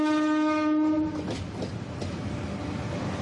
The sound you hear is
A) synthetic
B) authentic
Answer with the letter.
B